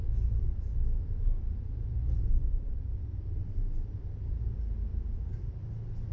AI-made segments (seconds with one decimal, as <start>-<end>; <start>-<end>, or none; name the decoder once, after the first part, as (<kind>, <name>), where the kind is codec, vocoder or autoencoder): 0.8-4.5 (vocoder, BigVGAN v2); 4.9-5.6